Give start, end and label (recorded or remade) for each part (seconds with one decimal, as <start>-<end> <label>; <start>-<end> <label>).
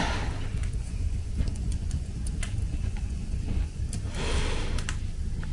0.0-0.5 recorded; 0.5-3.8 remade; 3.8-5.5 recorded